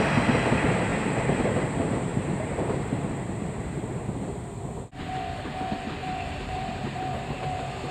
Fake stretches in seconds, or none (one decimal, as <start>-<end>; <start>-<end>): 0.9-1.4; 2.1-2.6; 6.0-7.9